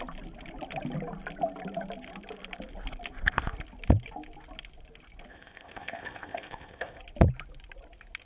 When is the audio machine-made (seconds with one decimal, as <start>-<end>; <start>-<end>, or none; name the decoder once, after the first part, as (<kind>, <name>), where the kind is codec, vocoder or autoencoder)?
5.3-7.0 (codec, ZipCodec)